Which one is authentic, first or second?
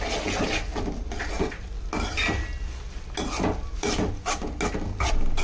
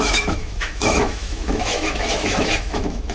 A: first